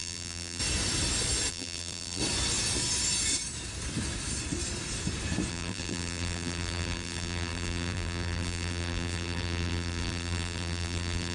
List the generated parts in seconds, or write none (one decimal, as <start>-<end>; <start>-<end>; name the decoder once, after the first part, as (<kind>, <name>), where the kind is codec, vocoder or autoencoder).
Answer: 0.0-0.6 (vocoder, BigVGAN v2); 1.5-2.2; 5.5-11.3